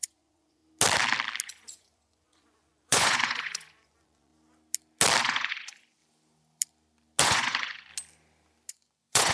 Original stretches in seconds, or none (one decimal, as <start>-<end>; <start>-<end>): 0.6-1.4; 4.3-5.2; 6.0-7.2; 7.9-8.7